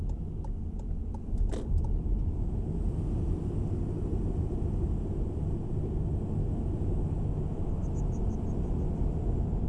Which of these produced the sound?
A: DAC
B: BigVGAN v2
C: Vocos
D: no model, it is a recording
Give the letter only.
D